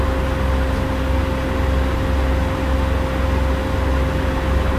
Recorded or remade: recorded